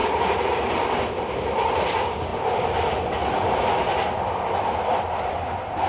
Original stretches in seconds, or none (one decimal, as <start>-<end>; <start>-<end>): 0.0-5.9